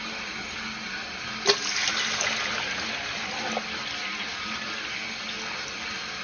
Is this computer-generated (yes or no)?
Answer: no